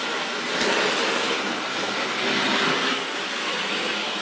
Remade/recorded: recorded